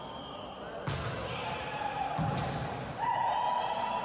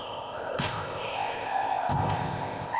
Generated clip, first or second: second